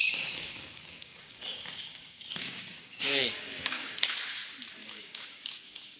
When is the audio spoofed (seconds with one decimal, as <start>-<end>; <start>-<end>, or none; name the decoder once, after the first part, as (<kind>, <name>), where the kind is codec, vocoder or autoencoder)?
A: 0.0-4.4 (codec, DAC); 4.9-6.0

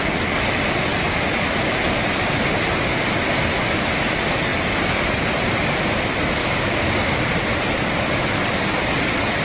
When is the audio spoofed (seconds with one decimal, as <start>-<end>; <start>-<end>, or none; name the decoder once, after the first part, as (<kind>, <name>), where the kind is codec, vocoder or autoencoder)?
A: 6.4-7.3 (codec, DAC)

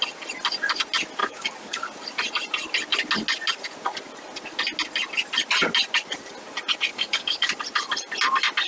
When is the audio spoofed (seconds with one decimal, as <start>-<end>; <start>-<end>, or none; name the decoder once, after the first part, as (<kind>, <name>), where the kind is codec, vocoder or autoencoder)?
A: 1.2-1.8 (codec, DAC); 6.9-7.5